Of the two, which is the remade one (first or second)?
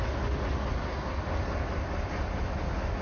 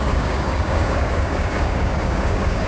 second